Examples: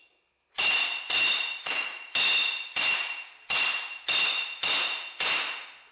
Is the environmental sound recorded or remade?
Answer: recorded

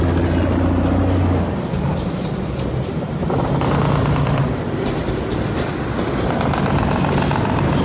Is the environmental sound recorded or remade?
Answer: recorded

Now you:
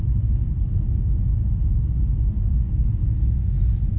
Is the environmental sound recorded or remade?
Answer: recorded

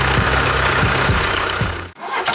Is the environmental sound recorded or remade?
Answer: remade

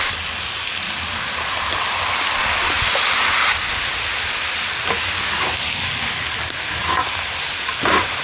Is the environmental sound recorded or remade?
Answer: recorded